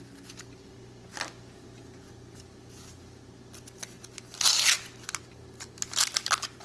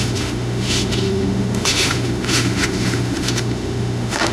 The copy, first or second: second